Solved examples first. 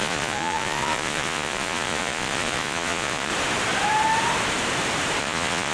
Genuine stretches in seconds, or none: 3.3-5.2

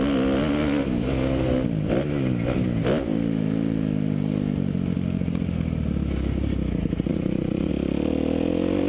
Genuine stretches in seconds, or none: 0.0-7.1; 7.7-8.9

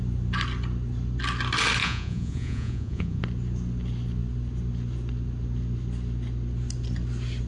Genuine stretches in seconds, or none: 0.0-1.8; 3.2-7.5

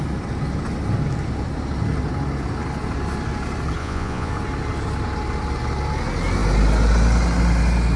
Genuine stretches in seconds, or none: 0.0-3.8; 4.3-8.0